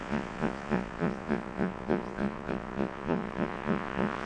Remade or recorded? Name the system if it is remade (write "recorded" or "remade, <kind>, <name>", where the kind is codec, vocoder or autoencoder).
remade, vocoder, Vocos